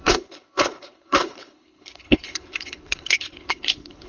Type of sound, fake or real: fake